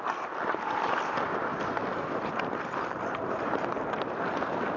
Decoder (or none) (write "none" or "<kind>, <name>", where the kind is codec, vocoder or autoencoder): vocoder, BigVGAN v2